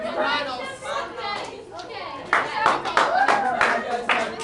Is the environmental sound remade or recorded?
recorded